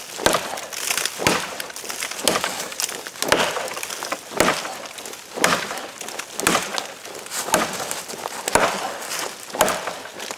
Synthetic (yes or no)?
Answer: no